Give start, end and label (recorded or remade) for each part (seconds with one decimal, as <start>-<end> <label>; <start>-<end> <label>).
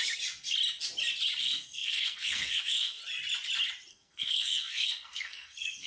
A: 0.0-1.4 recorded; 1.4-3.0 remade; 3.0-3.9 recorded; 3.9-5.9 remade